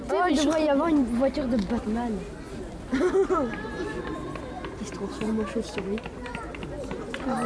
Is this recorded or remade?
recorded